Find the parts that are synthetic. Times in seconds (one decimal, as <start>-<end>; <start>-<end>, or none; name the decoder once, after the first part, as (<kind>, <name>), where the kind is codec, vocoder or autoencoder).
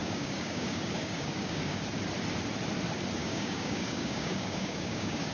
0.0-1.8 (codec, DAC); 3.2-5.3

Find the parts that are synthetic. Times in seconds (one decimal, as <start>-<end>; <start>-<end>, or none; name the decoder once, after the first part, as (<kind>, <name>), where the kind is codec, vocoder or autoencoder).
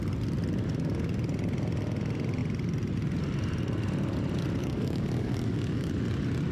4.6-5.9 (codec, DAC)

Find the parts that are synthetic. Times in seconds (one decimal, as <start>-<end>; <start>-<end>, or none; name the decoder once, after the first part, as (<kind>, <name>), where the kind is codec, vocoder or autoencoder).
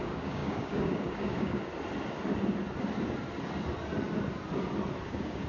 0.0-1.7 (codec, DAC); 5.0-5.5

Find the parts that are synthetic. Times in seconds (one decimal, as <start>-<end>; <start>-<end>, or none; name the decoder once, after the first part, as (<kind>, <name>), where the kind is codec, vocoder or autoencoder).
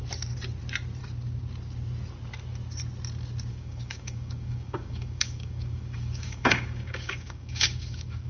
3.5-8.3 (codec, DAC)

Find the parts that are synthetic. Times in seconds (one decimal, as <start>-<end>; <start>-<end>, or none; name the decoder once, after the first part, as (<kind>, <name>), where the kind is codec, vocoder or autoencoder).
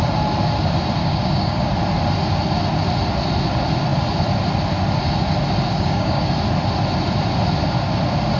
1.0-1.7 (codec, DAC); 5.7-6.2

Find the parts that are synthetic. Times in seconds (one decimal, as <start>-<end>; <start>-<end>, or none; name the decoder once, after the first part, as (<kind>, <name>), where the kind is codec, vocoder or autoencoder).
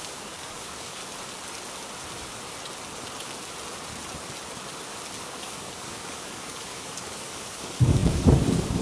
0.0-1.0 (codec, DAC); 5.2-8.8